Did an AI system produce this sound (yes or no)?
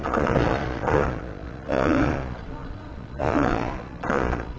yes